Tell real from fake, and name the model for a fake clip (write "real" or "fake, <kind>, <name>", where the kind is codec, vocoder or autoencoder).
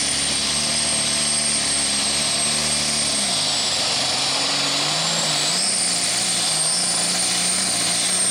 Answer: real